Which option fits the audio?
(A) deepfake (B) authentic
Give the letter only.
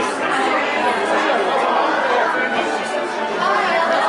B